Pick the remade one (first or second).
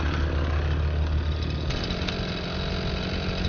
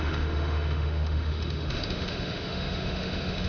second